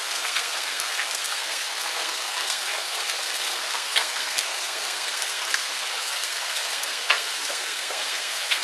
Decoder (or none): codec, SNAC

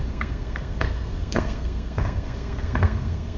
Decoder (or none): codec, SNAC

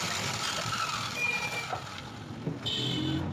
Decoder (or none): none